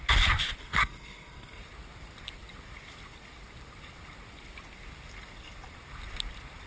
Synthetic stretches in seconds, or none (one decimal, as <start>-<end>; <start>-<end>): 0.6-1.6